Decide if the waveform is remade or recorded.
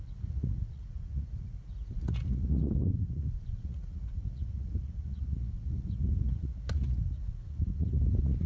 remade